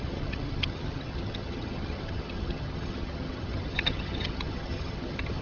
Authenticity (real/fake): fake